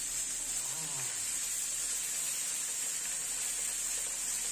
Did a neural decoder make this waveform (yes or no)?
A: no